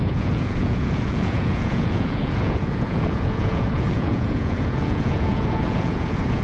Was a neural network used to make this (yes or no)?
yes